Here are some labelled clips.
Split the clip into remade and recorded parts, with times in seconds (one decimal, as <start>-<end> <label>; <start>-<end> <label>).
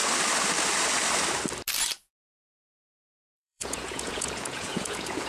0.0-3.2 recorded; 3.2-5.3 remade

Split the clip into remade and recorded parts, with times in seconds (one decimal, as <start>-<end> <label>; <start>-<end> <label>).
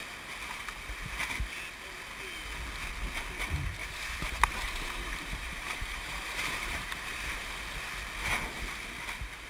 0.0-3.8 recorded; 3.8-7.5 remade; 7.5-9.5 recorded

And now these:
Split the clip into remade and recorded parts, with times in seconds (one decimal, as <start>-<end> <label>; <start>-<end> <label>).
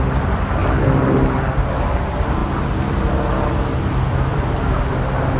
0.0-0.6 recorded; 0.6-1.2 remade; 1.2-2.4 recorded; 2.4-3.0 remade; 3.0-4.3 recorded; 4.3-4.8 remade; 4.8-5.4 recorded